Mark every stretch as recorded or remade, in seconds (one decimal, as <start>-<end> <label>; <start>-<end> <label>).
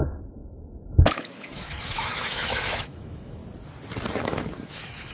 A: 0.0-3.4 remade; 3.4-4.2 recorded; 4.2-5.1 remade